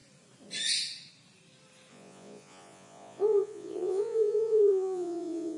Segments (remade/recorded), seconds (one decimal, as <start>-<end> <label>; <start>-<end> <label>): 0.0-1.9 recorded; 1.9-5.6 remade